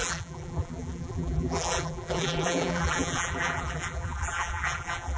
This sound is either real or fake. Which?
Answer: fake